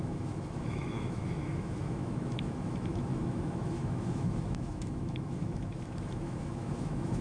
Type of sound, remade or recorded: remade